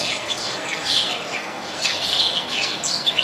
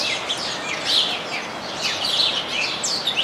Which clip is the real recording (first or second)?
second